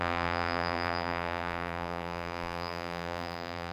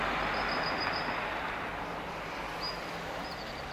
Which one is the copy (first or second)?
first